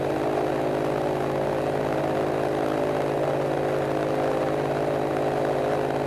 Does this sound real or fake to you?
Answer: real